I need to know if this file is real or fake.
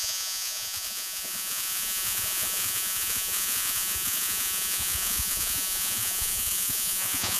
fake